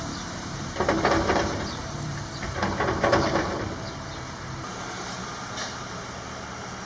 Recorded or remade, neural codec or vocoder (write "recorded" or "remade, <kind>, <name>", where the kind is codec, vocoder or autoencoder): remade, vocoder, BigVGAN v2